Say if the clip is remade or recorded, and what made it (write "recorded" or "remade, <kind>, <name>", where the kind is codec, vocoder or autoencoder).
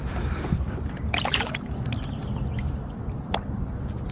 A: recorded